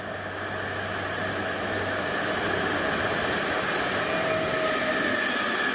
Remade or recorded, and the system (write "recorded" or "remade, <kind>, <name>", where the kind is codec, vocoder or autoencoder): recorded